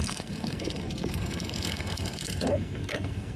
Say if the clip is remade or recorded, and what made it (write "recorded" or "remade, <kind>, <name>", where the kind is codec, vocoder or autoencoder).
remade, codec, SNAC